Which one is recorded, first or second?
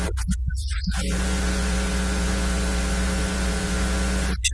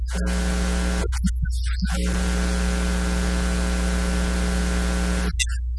second